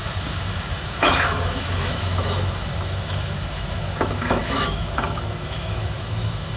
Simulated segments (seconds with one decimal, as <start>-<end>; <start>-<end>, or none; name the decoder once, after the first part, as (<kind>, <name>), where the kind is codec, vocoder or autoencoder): 0.0-6.6 (autoencoder, DAC-VAE)